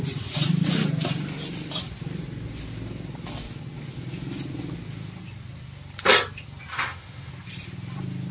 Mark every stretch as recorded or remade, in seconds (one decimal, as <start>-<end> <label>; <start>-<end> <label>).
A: 0.0-6.7 recorded; 6.7-7.3 remade; 7.3-8.3 recorded